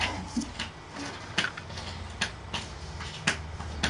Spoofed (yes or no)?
no